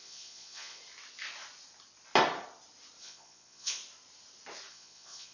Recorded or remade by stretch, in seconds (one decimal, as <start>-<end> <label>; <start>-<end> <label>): 0.0-0.8 remade; 0.8-3.0 recorded; 3.0-3.8 remade; 3.8-4.7 recorded; 4.7-5.3 remade